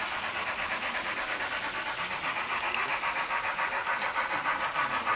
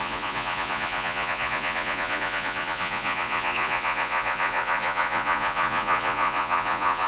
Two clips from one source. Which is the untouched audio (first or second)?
first